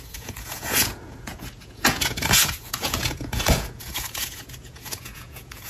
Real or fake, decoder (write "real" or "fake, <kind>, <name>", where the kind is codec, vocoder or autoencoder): fake, vocoder, Vocos